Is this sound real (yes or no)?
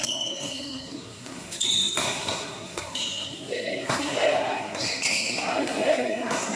no